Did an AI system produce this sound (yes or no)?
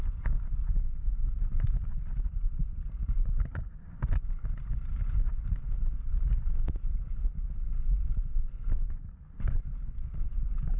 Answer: no